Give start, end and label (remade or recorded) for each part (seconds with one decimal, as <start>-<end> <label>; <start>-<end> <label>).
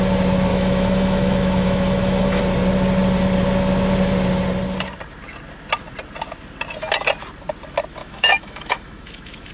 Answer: 0.0-0.5 recorded; 0.5-2.4 remade; 2.4-8.0 recorded; 8.0-9.5 remade